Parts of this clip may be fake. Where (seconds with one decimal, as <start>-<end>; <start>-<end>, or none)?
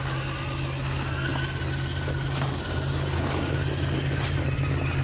none